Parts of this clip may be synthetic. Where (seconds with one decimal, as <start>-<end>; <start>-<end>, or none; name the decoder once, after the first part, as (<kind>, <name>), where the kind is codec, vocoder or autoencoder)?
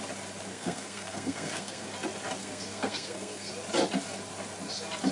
0.5-1.9 (codec, SNAC); 2.4-3.5